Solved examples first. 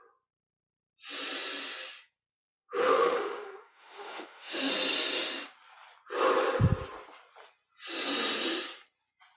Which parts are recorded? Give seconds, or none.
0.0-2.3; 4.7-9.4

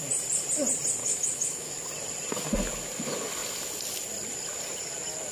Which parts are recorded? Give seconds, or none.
0.0-1.0; 1.7-5.3

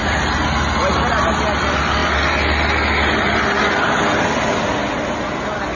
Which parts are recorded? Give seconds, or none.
0.0-5.8

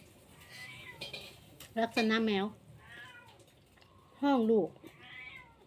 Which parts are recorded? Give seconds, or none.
0.0-0.6; 1.1-5.7